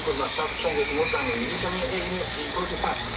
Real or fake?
fake